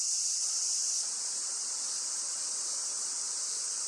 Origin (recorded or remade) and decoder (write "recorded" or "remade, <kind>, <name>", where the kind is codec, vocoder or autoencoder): remade, vocoder, BigVGAN v2